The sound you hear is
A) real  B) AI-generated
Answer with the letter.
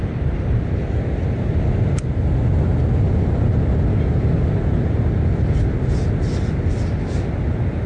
A